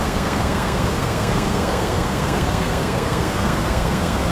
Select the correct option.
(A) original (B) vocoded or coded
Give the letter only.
B